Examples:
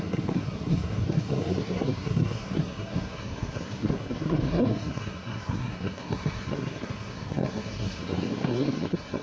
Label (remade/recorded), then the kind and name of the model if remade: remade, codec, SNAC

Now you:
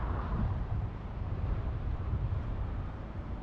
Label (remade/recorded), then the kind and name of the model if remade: remade, vocoder, BigVGAN v2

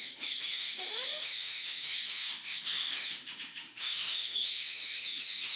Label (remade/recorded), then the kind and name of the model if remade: remade, autoencoder, DAC-VAE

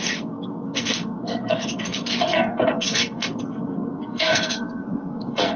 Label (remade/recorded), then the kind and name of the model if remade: remade, codec, SNAC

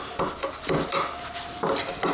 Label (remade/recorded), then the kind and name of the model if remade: recorded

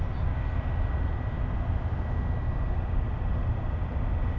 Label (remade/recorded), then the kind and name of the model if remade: recorded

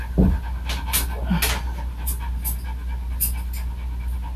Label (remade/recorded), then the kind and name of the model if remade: recorded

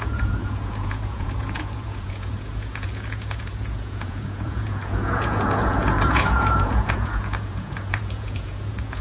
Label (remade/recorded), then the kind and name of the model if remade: remade, vocoder, Vocos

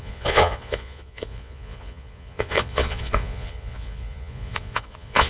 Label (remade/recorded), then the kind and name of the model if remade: remade, vocoder, Vocos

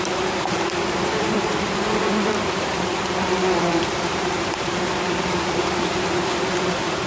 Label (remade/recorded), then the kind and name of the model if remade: remade, vocoder, BigVGAN v2